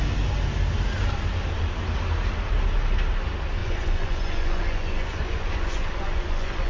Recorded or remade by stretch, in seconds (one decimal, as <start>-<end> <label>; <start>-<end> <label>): 0.0-3.6 recorded; 3.6-6.7 remade